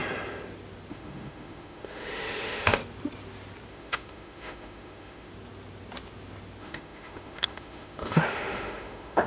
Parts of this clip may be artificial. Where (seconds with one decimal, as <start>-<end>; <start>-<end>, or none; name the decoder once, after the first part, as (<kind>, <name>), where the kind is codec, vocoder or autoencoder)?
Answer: 0.9-2.8 (autoencoder, DAC-VAE); 3.7-5.3; 6.6-9.3

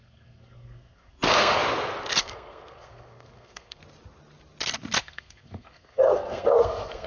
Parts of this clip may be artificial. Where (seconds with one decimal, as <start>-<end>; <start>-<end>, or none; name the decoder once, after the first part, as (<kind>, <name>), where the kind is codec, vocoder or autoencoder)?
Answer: 0.0-1.6 (codec, SNAC); 2.2-3.8; 5.0-7.1

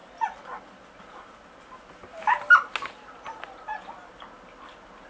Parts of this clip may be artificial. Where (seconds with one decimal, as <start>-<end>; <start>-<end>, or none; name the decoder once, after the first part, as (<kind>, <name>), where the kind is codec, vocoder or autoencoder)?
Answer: none

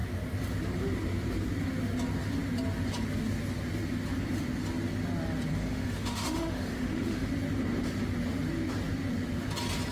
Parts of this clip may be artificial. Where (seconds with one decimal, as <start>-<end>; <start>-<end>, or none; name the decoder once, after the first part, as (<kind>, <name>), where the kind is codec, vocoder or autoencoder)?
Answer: 5.5-7.3 (autoencoder, DAC-VAE)

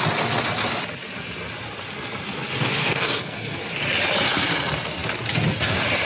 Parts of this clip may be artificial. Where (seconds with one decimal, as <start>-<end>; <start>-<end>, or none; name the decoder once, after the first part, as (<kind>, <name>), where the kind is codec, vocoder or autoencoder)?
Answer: 2.8-3.6 (codec, SNAC)

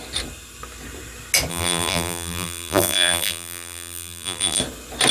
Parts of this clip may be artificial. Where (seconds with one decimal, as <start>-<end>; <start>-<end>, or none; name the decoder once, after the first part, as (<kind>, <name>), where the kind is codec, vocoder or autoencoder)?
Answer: 1.5-4.6 (vocoder, BigVGAN v2)

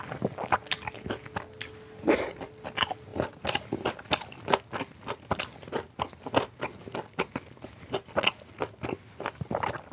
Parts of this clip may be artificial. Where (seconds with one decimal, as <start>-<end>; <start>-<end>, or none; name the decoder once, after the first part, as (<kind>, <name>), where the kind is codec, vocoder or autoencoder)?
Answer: none

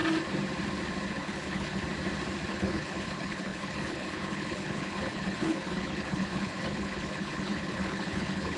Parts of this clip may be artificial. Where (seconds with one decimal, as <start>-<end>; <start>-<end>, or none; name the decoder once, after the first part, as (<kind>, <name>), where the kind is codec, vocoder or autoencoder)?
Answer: 1.1-1.8 (codec, HILCodec); 2.5-8.6